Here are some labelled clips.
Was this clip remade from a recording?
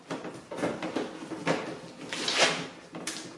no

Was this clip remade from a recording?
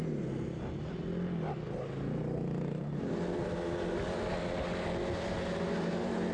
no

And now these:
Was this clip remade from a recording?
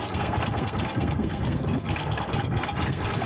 yes